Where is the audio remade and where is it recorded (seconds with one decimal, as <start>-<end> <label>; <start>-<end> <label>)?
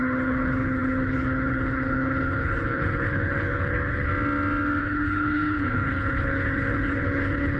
0.0-4.1 remade; 4.1-4.8 recorded; 4.8-7.6 remade